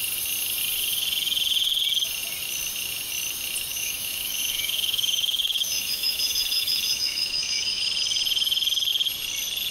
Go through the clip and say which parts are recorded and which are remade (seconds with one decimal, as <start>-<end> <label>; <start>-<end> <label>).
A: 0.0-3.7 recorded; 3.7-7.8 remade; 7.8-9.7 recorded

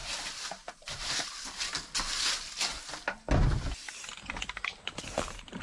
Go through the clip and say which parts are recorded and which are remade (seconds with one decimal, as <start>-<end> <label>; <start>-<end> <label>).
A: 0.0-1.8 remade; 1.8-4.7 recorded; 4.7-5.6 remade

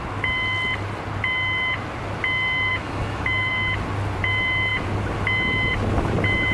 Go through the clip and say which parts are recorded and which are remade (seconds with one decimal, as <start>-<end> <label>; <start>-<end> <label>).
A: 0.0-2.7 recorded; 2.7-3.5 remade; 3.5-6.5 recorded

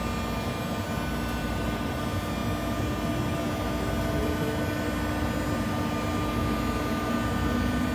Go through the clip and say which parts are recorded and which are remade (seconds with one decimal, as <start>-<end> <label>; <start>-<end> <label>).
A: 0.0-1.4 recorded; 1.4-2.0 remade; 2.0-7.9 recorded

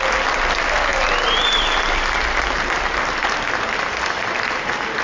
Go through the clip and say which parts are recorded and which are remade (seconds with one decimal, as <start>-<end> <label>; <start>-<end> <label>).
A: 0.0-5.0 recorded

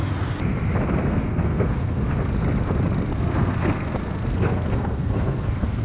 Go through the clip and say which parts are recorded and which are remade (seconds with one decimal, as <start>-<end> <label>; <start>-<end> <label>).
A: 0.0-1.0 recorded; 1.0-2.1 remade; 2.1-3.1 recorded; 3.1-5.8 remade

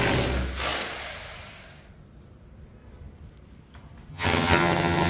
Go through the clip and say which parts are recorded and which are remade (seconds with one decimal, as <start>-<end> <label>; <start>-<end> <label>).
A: 0.0-4.1 recorded; 4.1-5.1 remade